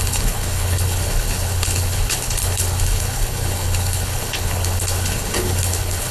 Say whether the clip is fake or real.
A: fake